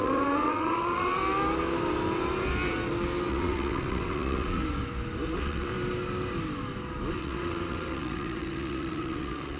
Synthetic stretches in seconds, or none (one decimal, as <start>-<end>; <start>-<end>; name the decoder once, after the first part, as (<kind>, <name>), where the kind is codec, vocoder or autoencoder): 0.0-1.2 (vocoder, WaveNeXt); 3.3-4.6; 5.3-5.7; 7.1-9.6